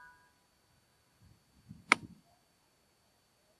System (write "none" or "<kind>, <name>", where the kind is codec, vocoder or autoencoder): none